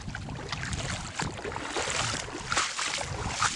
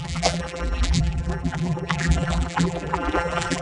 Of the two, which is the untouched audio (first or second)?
first